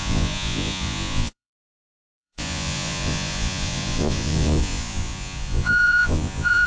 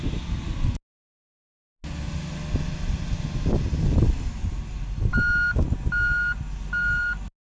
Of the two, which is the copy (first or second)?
first